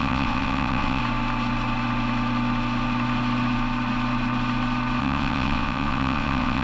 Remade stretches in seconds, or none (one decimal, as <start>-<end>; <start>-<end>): 0.0-1.0; 5.0-6.6